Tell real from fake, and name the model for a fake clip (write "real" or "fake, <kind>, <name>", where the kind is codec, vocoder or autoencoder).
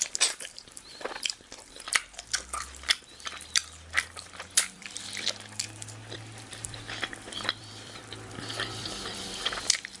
fake, vocoder, BigVGAN v2